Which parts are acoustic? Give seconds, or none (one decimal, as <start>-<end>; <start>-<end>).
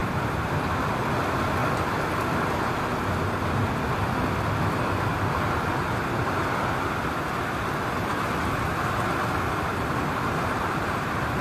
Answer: 0.9-9.7